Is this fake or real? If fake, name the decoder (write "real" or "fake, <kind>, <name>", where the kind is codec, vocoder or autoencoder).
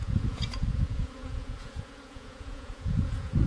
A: fake, vocoder, Vocos